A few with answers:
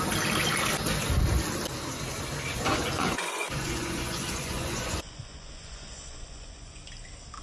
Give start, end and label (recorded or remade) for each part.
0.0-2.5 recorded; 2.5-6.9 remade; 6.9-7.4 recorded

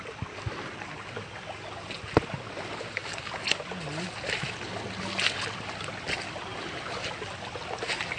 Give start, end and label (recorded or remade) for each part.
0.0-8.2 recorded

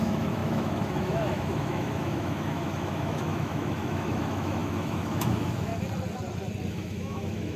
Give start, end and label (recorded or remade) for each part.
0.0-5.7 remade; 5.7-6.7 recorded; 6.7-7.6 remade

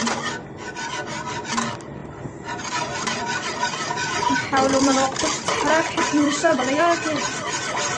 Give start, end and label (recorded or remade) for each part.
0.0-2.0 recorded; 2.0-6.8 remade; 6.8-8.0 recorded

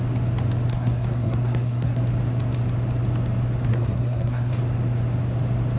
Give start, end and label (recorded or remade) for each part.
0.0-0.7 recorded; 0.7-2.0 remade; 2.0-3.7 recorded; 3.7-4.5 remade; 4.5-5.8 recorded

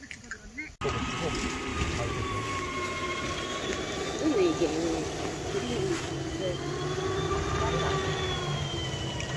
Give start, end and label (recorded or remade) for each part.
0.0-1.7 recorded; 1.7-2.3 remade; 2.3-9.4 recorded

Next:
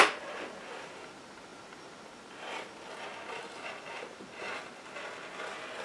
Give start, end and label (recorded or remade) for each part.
0.0-5.8 recorded

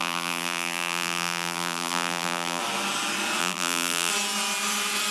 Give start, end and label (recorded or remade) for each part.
0.0-2.6 remade; 2.6-3.4 recorded; 3.4-4.1 remade; 4.1-5.1 recorded